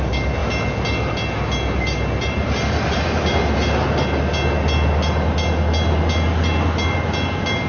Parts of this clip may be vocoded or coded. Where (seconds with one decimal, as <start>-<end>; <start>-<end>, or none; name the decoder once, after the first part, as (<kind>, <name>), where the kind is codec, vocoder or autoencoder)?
none